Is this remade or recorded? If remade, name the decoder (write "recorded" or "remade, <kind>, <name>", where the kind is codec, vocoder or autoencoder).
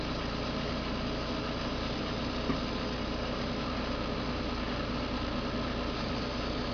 recorded